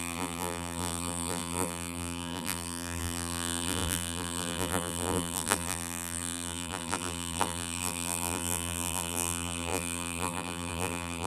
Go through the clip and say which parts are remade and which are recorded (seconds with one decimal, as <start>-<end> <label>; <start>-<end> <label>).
0.0-11.3 remade